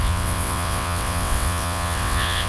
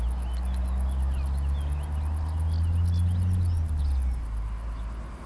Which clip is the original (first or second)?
second